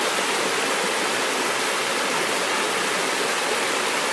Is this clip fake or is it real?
real